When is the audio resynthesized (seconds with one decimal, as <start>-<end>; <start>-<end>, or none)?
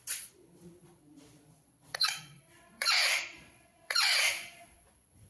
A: 0.0-5.3